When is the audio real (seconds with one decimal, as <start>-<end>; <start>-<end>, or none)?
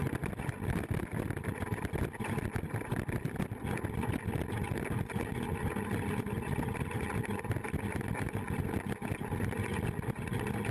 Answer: 0.0-10.7